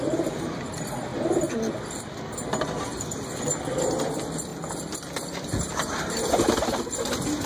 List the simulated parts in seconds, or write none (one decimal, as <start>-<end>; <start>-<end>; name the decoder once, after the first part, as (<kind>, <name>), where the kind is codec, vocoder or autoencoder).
0.0-1.1 (vocoder, BigVGAN v2); 1.9-7.5